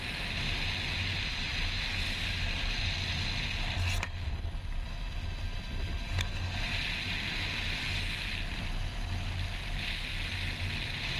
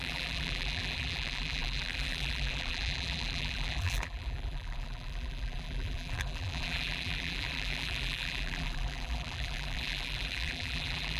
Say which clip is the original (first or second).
first